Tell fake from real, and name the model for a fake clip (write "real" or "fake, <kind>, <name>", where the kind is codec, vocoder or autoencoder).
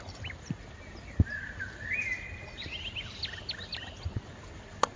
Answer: real